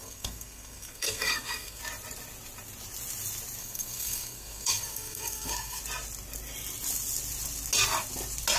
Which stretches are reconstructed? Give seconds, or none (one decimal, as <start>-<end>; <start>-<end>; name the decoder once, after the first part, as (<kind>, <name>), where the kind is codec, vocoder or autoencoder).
0.0-1.8 (codec, SNAC); 3.6-5.8